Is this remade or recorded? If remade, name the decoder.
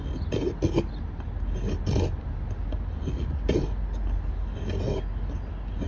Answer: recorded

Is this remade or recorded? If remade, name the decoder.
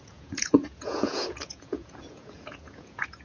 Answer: remade, vocoder, Vocos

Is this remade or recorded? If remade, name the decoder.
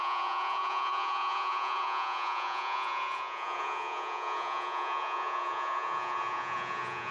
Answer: remade, vocoder, Vocos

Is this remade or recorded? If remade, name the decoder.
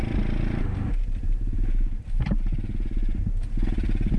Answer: recorded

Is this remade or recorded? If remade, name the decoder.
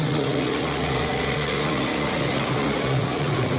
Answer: remade, vocoder, Vocos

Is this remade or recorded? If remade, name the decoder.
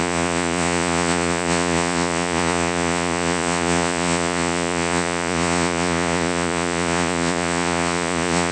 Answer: remade, vocoder, Vocos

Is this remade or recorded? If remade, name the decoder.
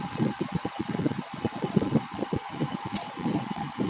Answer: remade, vocoder, Vocos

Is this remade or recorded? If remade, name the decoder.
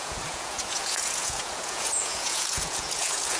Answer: remade, vocoder, Vocos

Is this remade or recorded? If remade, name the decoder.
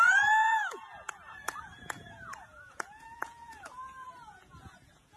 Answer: remade, vocoder, Vocos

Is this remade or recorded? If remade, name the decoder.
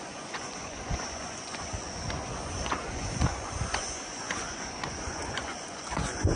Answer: remade, vocoder, Vocos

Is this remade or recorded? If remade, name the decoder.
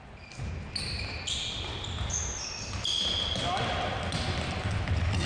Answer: recorded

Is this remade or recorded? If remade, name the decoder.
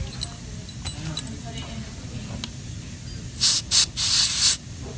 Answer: recorded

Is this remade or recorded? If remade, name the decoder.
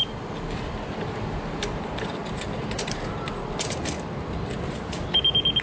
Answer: recorded